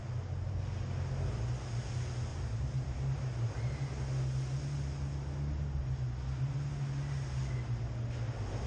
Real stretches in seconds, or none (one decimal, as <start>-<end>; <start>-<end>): 0.0-2.3; 3.6-8.7

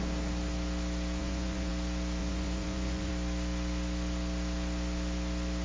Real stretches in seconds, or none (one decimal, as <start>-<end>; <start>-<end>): 0.0-1.2; 1.7-2.2; 3.1-5.6

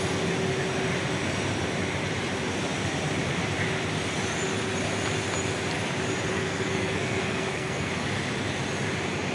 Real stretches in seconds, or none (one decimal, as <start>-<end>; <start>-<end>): 0.0-6.3; 7.9-9.3

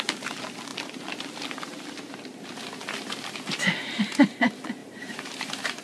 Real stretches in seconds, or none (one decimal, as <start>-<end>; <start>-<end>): 0.0-4.8

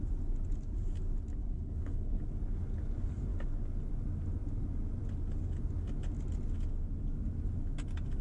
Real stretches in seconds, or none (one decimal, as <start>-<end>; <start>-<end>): 0.0-1.4; 2.2-8.2